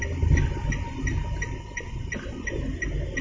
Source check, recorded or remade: recorded